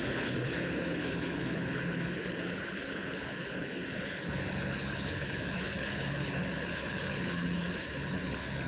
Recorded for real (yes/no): no